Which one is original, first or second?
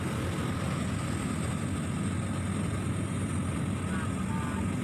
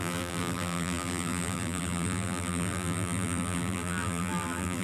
first